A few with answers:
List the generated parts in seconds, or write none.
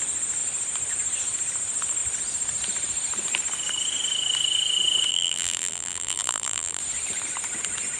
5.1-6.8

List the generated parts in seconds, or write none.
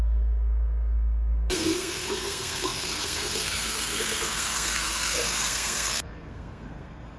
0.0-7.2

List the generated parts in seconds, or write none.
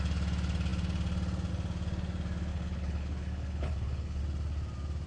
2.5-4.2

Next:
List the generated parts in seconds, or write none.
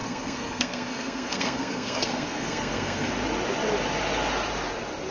0.0-3.1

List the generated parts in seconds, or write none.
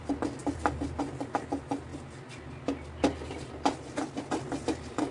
none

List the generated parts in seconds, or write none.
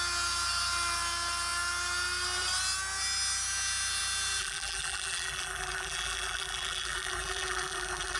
4.4-8.2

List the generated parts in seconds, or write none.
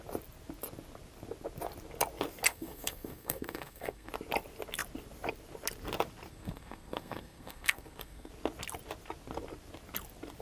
2.5-4.1; 6.3-8.3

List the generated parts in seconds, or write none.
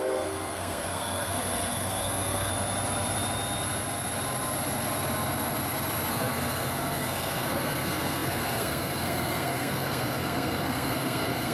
0.0-2.5; 6.1-11.5